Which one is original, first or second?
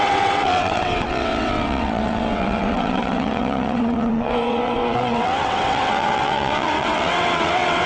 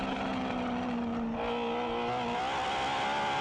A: second